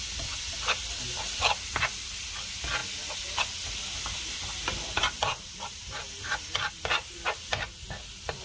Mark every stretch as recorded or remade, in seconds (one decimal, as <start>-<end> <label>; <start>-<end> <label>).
0.0-8.4 recorded